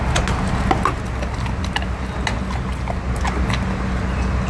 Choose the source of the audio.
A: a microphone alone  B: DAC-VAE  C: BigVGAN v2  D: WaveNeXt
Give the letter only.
A